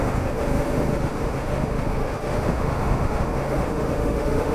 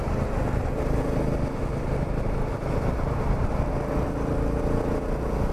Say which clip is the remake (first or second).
first